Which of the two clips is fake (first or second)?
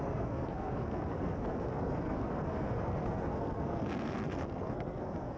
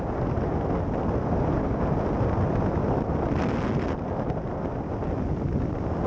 first